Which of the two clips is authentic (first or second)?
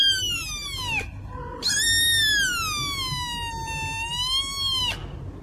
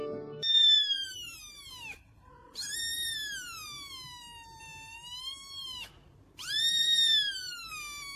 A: first